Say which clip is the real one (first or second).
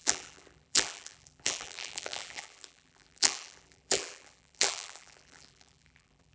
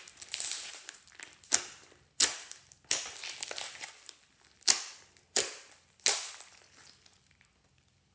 second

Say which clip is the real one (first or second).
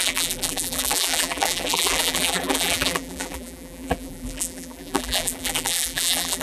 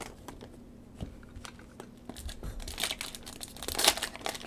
second